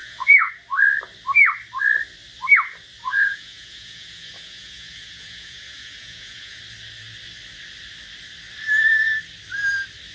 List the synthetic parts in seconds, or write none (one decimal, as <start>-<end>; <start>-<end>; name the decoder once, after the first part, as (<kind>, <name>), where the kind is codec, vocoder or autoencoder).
0.0-0.5 (vocoder, Vocos); 3.0-6.6